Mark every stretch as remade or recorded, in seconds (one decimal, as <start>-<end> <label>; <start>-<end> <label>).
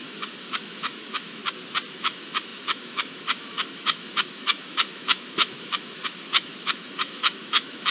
0.0-1.4 remade; 1.4-1.9 recorded; 1.9-7.9 remade